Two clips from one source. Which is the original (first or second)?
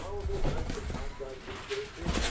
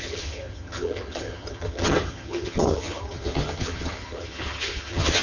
first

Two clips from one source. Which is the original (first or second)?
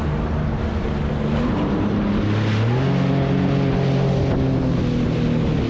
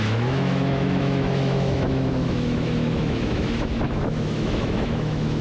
first